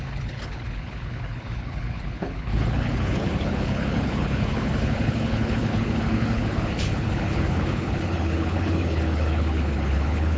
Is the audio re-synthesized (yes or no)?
yes